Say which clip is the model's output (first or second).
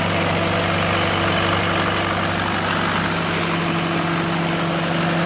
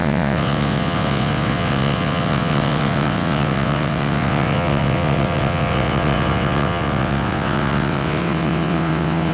second